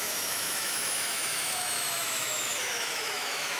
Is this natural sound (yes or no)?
no